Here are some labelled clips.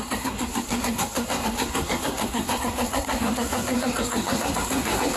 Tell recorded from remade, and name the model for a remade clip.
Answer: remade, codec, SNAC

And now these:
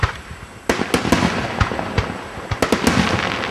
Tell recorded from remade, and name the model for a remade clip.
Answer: recorded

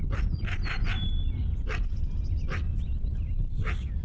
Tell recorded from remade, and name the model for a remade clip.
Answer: recorded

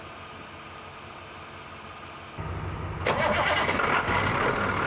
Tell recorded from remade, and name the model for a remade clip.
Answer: recorded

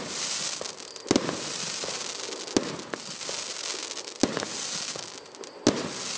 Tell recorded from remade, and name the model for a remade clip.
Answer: recorded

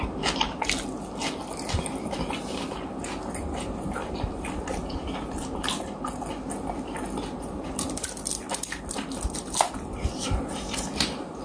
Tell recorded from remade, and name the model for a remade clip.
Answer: recorded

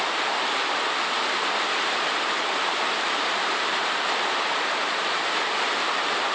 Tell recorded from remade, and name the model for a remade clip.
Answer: remade, vocoder, BigVGAN v2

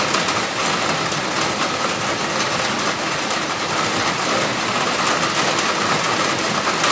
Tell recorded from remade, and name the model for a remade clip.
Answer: recorded